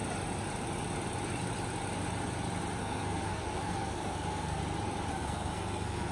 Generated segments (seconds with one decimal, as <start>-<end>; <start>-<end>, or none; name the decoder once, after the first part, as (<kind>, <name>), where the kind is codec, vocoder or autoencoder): 2.8-4.6 (codec, SNAC); 5.1-6.1